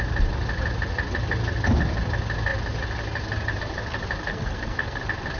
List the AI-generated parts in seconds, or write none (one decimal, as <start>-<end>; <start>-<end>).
4.3-5.0